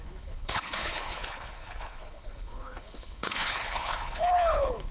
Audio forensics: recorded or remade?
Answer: remade